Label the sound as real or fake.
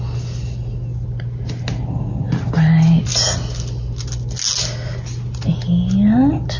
real